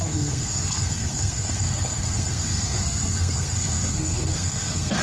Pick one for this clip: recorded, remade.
remade